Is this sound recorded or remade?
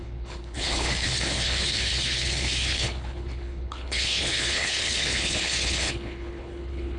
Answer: remade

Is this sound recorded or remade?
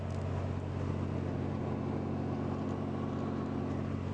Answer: recorded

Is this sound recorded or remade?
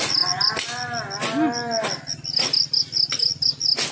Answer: recorded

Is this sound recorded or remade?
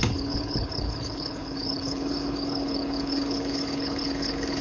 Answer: remade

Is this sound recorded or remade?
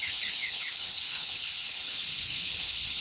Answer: remade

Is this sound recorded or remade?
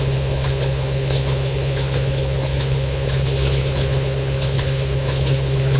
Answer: remade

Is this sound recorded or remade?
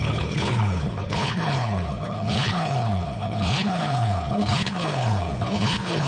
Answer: remade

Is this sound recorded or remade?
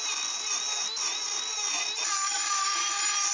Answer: recorded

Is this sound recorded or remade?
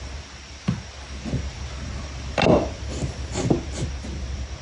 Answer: recorded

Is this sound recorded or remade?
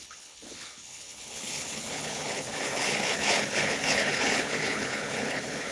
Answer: remade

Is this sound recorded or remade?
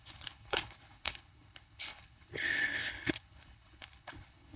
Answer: remade